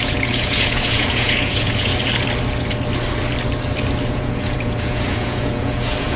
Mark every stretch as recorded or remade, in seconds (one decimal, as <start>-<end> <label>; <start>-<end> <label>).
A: 0.0-1.9 remade; 1.9-4.1 recorded; 4.1-6.2 remade